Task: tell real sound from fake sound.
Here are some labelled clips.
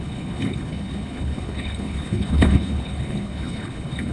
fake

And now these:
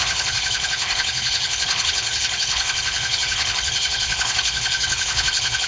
fake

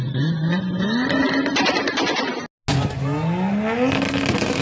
real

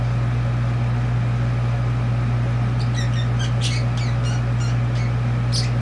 real